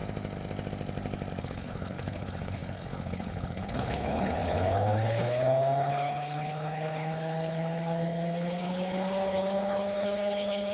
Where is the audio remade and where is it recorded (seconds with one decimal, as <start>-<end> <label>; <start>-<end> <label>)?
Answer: 0.0-1.4 recorded; 1.4-10.7 remade